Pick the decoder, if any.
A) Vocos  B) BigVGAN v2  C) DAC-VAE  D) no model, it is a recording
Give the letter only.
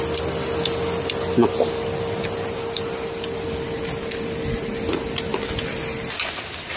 D